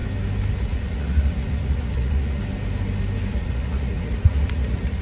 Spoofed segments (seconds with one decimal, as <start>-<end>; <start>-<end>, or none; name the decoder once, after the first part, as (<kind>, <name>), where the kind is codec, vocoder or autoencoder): 0.5-2.4 (vocoder, Vocos); 3.3-5.0